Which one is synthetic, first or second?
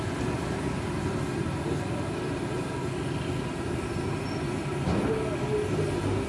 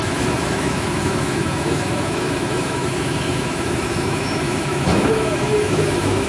second